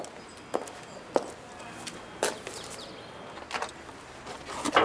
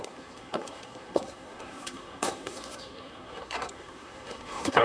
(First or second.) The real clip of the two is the first